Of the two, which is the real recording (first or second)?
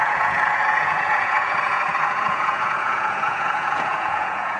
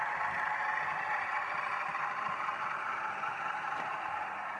second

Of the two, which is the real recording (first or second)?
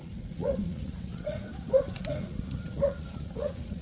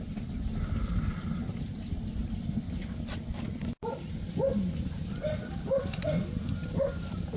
second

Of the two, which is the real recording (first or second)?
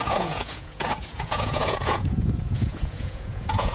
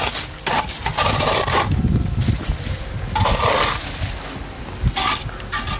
second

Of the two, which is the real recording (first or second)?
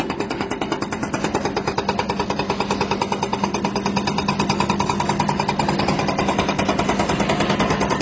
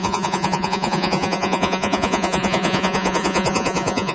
first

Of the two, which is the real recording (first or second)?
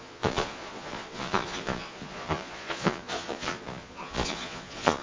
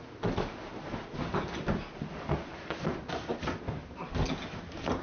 second